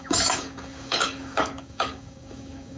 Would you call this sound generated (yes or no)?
yes